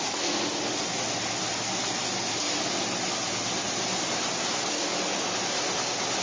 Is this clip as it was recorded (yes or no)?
yes